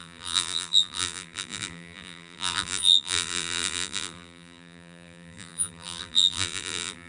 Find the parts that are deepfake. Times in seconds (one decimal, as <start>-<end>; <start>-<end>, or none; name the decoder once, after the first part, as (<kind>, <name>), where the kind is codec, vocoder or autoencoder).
0.0-7.1 (vocoder, BigVGAN v2)